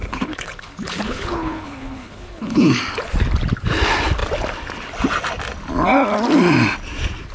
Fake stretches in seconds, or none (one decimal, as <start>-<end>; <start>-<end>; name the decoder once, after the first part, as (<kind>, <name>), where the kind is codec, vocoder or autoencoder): 0.0-2.8 (codec, HILCodec)